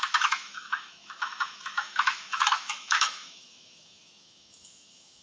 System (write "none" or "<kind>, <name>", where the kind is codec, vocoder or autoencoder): autoencoder, DAC-VAE